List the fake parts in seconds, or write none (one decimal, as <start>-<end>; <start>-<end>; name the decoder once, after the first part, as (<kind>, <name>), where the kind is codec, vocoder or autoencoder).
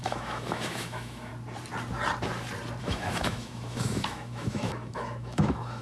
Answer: 0.0-1.3 (autoencoder, DAC-VAE); 2.8-5.8